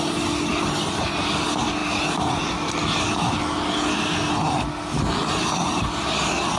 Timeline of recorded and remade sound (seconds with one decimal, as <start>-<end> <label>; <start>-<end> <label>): 0.0-6.6 recorded